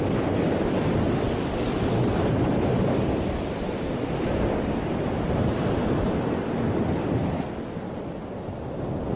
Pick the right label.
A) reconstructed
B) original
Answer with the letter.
B